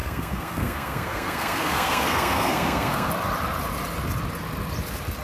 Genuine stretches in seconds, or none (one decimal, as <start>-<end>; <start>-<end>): 3.1-5.2